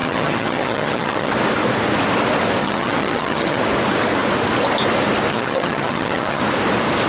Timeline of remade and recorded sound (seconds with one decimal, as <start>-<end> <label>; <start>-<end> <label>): 0.0-1.3 remade; 1.3-2.6 recorded; 2.6-3.6 remade; 3.6-5.3 recorded; 5.3-6.4 remade; 6.4-7.1 recorded